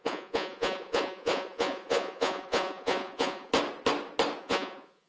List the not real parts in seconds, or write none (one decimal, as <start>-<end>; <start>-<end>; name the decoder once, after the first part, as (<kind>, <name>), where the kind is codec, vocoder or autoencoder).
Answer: 0.0-3.5 (vocoder, Vocos); 4.4-5.1